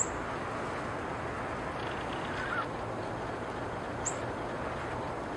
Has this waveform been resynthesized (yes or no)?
no